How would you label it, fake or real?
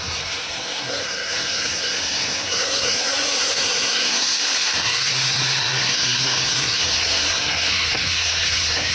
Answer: fake